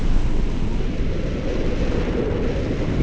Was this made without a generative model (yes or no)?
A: yes